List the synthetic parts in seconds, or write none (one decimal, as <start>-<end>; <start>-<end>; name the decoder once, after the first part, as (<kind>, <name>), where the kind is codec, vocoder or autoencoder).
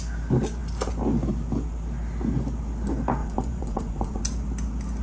3.2-4.2 (vocoder, Vocos)